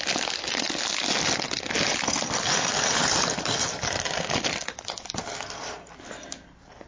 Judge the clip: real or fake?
real